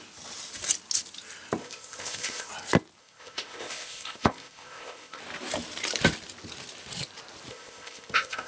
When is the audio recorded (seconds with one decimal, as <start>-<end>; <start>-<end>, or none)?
0.0-1.6; 2.5-3.0; 5.2-7.5